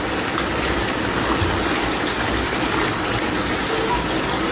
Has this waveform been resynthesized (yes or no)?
no